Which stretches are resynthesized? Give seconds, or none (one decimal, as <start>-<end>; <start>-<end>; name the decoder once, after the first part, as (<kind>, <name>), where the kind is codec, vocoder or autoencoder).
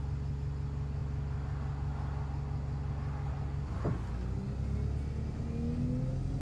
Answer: none